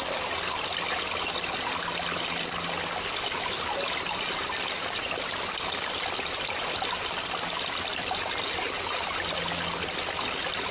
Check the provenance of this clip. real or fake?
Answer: real